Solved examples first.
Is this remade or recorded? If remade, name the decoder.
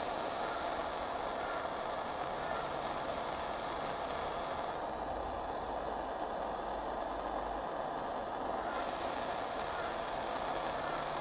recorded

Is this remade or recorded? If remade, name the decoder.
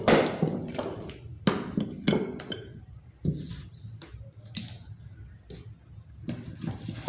recorded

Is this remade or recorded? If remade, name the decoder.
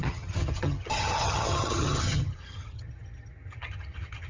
remade, vocoder, HiFi-GAN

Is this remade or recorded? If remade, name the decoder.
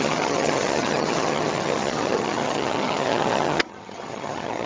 remade, vocoder, HiFi-GAN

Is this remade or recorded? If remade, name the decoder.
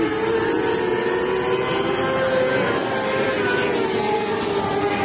recorded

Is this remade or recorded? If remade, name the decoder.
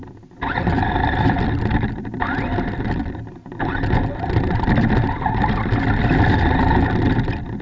recorded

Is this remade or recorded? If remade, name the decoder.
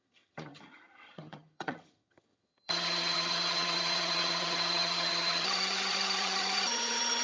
remade, vocoder, HiFi-GAN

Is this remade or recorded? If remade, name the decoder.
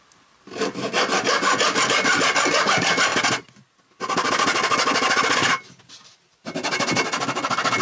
recorded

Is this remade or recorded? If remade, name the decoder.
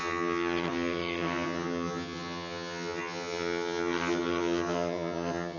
remade, vocoder, HiFi-GAN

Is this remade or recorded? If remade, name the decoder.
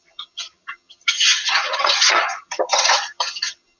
remade, vocoder, HiFi-GAN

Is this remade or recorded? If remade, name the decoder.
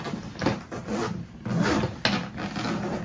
recorded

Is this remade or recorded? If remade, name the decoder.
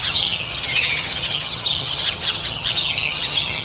remade, vocoder, HiFi-GAN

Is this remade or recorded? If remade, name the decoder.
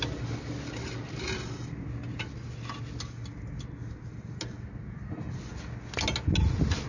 recorded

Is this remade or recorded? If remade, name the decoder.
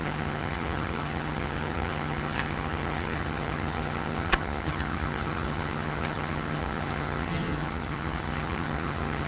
remade, vocoder, HiFi-GAN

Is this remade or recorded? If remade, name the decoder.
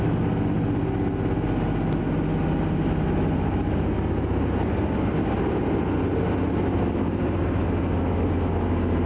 recorded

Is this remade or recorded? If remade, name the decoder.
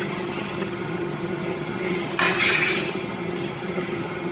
remade, vocoder, HiFi-GAN